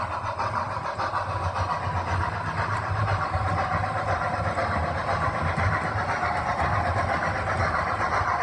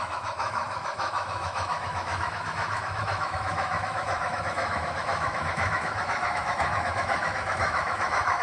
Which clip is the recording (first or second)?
first